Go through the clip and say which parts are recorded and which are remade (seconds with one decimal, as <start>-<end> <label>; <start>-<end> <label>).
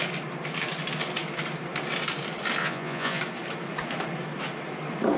0.0-2.6 recorded; 2.6-3.2 remade; 3.2-5.2 recorded